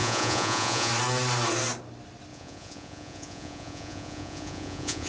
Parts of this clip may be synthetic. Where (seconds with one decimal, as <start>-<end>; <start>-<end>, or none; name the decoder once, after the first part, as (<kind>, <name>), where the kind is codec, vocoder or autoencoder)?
0.0-0.9 (vocoder, Vocos); 2.3-5.1